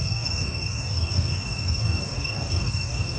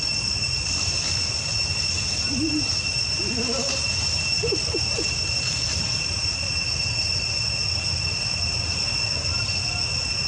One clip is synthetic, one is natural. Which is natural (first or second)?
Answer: second